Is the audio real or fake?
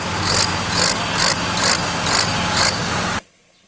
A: real